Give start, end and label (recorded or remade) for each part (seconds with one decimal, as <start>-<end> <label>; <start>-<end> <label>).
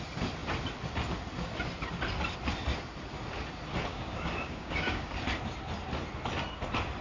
0.0-3.9 recorded; 3.9-5.1 remade; 5.1-7.0 recorded